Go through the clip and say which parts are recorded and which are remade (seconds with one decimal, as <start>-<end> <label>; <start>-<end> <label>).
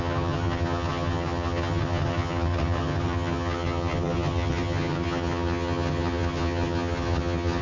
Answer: 0.0-7.6 remade